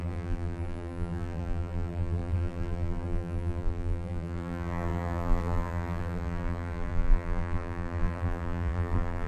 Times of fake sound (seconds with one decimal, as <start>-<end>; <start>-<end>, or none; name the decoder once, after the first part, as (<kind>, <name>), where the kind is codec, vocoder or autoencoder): 0.0-9.3 (vocoder, BigVGAN v2)